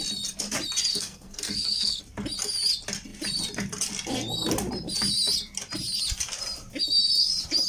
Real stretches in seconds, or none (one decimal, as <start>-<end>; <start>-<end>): 0.0-0.9; 2.0-7.7